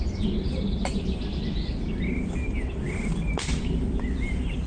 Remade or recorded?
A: recorded